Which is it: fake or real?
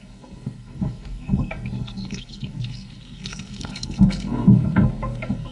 fake